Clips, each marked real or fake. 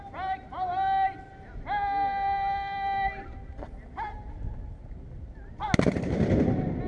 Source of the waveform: real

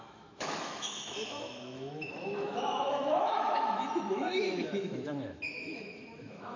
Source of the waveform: fake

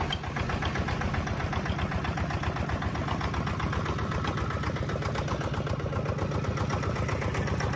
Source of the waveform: real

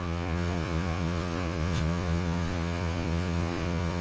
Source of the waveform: fake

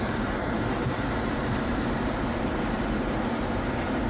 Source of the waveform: fake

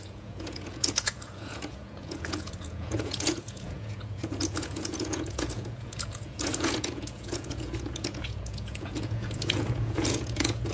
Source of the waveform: fake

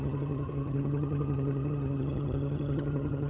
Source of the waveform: fake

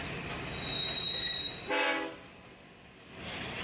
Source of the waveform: real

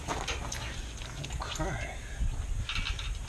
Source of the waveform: real